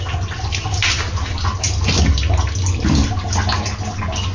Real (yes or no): yes